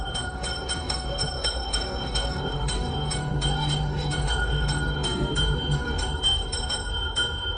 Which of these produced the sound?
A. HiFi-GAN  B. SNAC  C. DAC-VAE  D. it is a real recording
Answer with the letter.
C